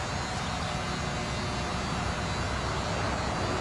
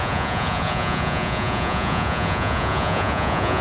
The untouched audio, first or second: first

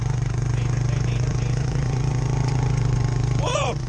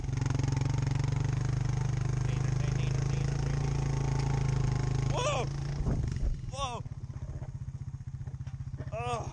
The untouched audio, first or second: second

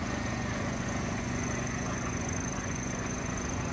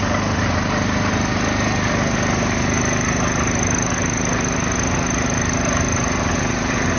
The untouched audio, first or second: second